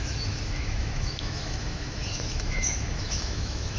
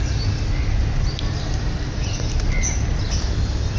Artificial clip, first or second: first